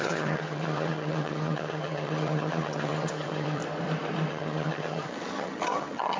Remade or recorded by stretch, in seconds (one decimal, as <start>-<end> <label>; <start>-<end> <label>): 0.0-3.6 remade; 3.6-4.3 recorded; 4.3-6.2 remade